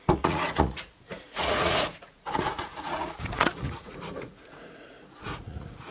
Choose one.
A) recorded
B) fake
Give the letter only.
B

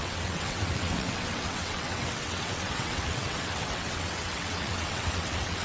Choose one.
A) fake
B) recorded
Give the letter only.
A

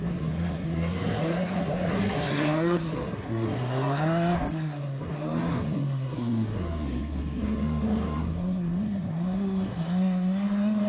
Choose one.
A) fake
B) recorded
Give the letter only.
A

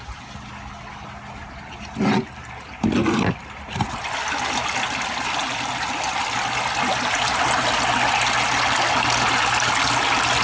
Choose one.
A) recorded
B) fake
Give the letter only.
A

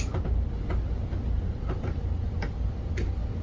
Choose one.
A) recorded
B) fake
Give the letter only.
A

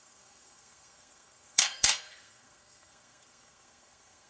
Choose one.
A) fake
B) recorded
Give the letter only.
A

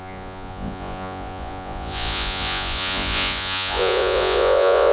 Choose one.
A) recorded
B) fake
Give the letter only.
B